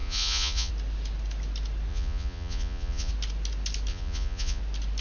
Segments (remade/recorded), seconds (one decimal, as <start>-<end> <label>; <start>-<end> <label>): 0.0-0.7 remade; 0.7-1.9 recorded; 1.9-3.1 remade; 3.1-3.9 recorded; 3.9-4.6 remade; 4.6-5.0 recorded